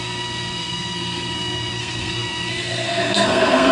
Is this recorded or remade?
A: remade